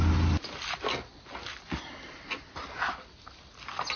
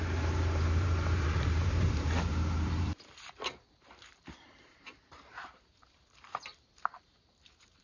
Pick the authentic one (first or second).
first